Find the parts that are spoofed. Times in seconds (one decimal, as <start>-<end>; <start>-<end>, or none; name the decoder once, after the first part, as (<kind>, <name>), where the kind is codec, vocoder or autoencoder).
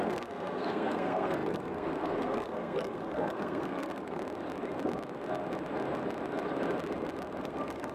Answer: 0.0-4.2 (codec, SNAC); 7.4-7.9